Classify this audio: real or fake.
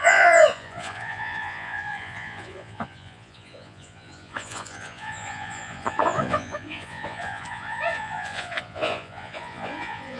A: fake